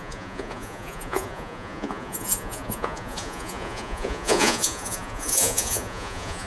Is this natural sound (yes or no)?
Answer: no